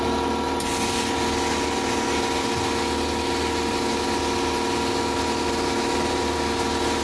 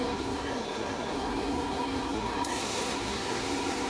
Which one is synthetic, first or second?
second